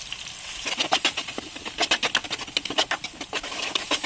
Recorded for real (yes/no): yes